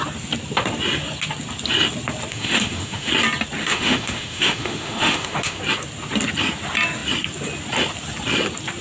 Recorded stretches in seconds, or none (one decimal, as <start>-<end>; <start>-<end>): 0.0-2.3; 3.1-3.6; 5.6-8.8